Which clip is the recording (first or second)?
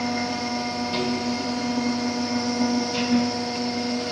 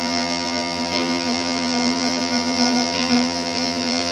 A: first